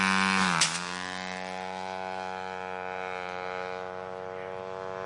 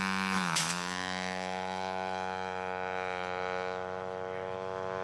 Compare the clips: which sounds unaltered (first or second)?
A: first